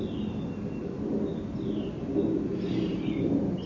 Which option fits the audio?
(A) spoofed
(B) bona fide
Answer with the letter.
B